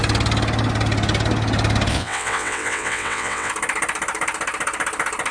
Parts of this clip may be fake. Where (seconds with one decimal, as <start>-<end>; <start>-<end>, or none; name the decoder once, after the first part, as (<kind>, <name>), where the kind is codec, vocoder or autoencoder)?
1.9-3.5 (vocoder, WaveNeXt)